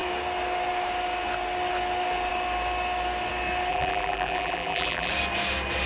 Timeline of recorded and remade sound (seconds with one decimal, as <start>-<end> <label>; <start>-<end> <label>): 0.0-3.7 recorded; 3.7-5.1 remade; 5.1-5.9 recorded